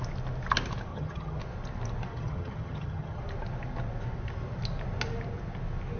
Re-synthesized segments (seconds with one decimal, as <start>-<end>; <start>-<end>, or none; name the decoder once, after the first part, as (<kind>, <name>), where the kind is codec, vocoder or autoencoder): 0.9-1.4 (vocoder, HiFi-GAN); 2.1-3.2